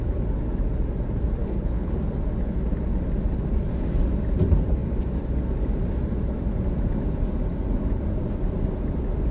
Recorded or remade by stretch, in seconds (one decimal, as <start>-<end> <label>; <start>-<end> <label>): 0.0-1.4 recorded; 1.4-2.0 remade; 2.0-9.3 recorded